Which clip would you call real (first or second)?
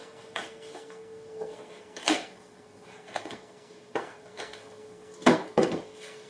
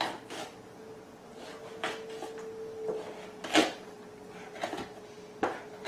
second